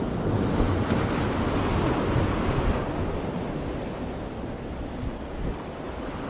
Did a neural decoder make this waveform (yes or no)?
no